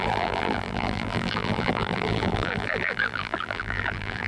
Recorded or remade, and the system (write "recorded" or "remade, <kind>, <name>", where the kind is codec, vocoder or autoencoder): remade, vocoder, BigVGAN v2